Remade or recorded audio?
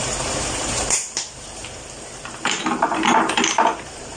remade